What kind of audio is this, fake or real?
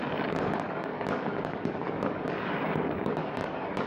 fake